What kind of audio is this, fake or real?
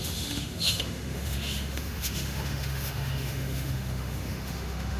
fake